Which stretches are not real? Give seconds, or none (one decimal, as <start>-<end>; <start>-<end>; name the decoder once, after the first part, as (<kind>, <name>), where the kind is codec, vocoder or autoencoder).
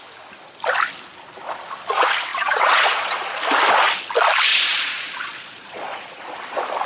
2.3-3.4 (vocoder, Vocos); 4.5-6.2